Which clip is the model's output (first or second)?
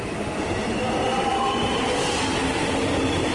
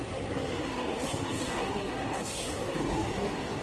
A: second